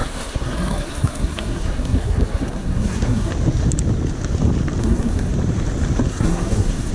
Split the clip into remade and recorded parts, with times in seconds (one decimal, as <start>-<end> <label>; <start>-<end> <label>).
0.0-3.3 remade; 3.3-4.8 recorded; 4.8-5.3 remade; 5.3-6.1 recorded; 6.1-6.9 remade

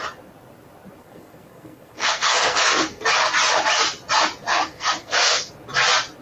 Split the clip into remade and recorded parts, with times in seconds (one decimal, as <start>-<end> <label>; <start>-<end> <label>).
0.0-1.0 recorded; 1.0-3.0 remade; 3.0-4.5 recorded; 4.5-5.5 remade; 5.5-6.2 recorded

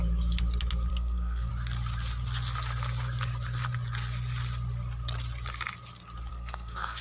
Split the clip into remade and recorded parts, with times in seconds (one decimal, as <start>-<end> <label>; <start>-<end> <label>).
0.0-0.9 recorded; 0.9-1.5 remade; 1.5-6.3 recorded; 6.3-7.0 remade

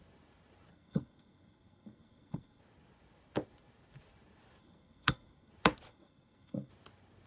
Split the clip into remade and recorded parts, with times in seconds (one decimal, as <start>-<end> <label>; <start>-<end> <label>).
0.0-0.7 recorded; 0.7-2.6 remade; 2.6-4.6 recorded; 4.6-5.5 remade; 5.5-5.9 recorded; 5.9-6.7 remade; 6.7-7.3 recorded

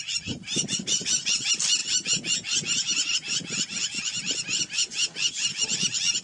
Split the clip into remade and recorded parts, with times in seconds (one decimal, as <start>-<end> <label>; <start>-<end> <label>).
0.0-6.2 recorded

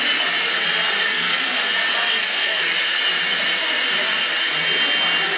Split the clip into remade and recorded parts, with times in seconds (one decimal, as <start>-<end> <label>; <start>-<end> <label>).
0.0-1.0 recorded; 1.0-1.7 remade; 1.7-2.1 recorded; 2.1-2.7 remade; 2.7-5.4 recorded

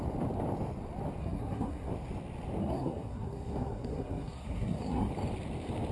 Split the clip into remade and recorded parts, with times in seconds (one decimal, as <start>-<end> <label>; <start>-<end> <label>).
0.0-1.2 recorded; 1.2-1.9 remade; 1.9-2.6 recorded; 2.6-5.1 remade; 5.1-5.9 recorded

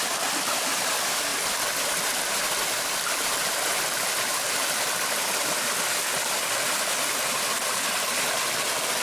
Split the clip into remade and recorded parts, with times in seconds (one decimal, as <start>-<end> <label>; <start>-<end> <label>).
0.0-9.0 recorded